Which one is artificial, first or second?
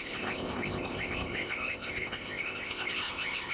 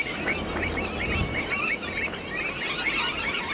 first